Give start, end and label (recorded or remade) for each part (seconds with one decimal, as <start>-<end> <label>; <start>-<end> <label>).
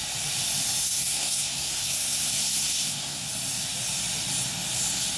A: 0.0-0.8 recorded; 0.8-3.3 remade; 3.3-5.2 recorded